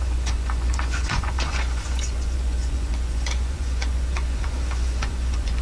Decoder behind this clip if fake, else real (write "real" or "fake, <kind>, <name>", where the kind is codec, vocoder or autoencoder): fake, vocoder, Vocos